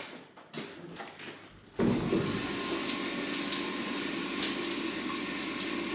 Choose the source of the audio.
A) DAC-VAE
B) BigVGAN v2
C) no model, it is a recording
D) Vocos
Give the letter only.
C